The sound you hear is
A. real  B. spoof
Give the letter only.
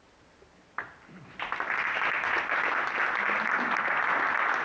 A